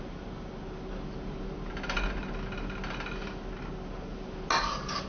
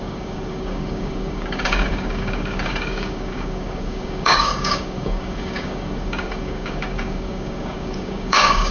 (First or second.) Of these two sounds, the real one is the first